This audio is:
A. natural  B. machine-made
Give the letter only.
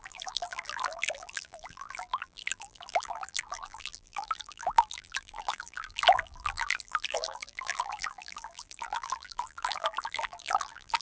B